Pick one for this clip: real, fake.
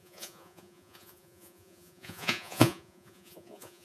fake